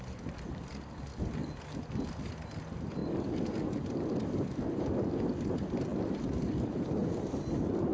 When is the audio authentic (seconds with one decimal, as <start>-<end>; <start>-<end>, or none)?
1.1-2.2; 3.0-4.0; 7.0-7.9